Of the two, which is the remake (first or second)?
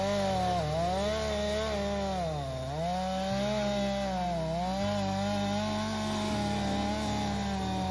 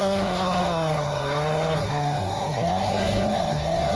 second